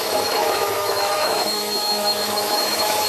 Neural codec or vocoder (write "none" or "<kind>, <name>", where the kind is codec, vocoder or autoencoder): autoencoder, DAC-VAE